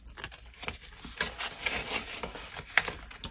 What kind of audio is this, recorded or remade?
recorded